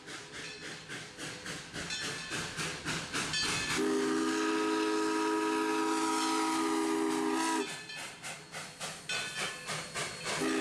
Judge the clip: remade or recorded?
recorded